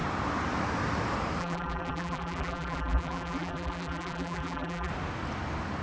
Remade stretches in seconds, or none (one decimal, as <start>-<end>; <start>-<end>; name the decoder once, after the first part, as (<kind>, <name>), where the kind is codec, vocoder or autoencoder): 1.4-4.9 (vocoder, BigVGAN v2)